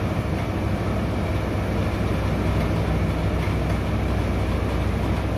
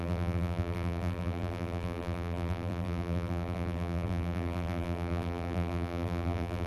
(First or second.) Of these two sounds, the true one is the first